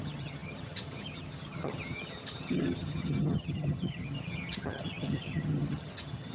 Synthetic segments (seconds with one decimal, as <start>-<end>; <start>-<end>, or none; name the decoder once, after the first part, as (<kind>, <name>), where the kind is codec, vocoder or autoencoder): 0.0-6.3 (vocoder, HiFi-GAN)